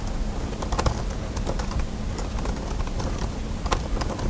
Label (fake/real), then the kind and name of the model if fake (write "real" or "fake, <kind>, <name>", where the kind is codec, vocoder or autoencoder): real